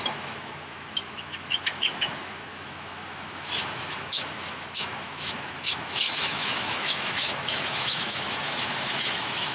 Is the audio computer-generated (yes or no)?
yes